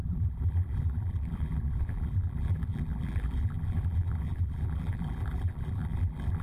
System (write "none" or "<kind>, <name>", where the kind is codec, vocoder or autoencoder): vocoder, BigVGAN v2